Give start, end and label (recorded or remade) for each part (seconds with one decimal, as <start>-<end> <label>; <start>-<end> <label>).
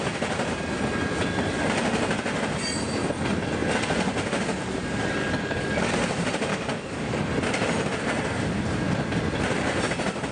0.0-5.2 recorded; 5.2-5.9 remade; 5.9-6.5 recorded; 6.5-7.2 remade; 7.2-10.3 recorded